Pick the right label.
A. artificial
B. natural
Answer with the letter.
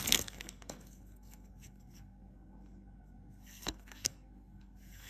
A